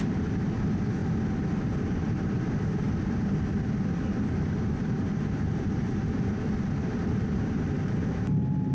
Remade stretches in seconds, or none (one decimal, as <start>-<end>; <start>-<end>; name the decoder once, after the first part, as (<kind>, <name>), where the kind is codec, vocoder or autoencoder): 0.0-1.0 (vocoder, BigVGAN v2); 1.8-8.7